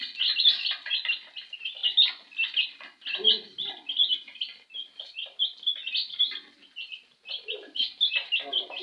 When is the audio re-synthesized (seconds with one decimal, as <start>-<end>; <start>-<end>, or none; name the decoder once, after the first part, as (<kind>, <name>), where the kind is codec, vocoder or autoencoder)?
none